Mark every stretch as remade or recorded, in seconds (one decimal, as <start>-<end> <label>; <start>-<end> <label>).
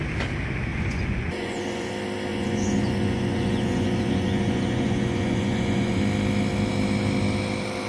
0.0-0.7 recorded; 0.7-1.9 remade; 1.9-2.3 recorded; 2.3-6.0 remade; 6.0-7.9 recorded